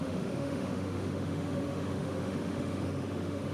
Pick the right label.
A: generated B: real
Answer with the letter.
A